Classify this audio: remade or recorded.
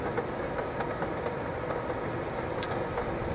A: recorded